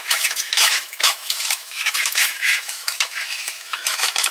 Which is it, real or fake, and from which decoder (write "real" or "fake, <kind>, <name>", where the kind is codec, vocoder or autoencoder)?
fake, autoencoder, DAC-VAE